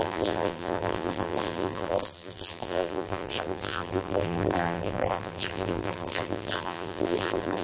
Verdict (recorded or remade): remade